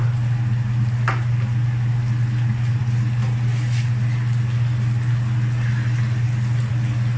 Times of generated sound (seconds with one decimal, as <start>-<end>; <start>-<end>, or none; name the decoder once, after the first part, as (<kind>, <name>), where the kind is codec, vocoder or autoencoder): none